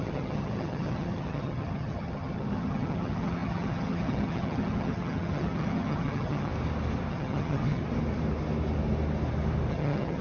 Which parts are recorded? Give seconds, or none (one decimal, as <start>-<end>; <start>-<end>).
6.5-7.1; 7.8-9.7